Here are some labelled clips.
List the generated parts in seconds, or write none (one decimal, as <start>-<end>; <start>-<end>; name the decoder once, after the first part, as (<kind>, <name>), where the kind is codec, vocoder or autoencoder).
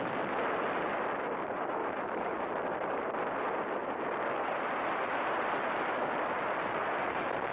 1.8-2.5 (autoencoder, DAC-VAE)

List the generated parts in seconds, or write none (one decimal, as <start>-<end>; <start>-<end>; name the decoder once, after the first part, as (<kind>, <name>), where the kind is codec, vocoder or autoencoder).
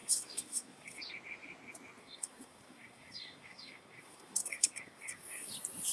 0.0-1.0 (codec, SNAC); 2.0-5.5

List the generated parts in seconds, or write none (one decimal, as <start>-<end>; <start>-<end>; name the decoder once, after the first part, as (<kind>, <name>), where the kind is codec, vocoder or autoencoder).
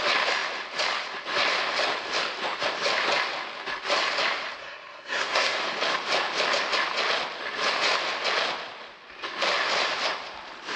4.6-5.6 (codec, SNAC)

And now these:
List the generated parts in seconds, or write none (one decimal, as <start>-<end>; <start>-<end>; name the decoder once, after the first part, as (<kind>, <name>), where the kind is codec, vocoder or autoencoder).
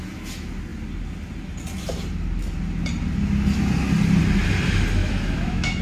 5.0-5.8 (autoencoder, DAC-VAE)